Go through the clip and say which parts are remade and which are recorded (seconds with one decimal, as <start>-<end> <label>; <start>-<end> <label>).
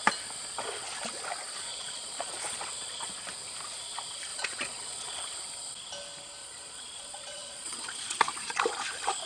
0.0-1.7 recorded; 1.7-3.1 remade; 3.1-4.3 recorded; 4.3-5.2 remade; 5.2-6.4 recorded; 6.4-8.6 remade; 8.6-9.3 recorded